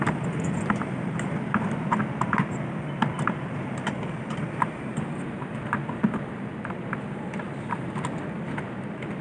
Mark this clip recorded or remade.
remade